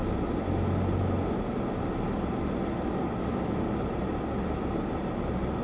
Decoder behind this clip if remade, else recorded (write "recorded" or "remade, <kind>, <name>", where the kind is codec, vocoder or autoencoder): recorded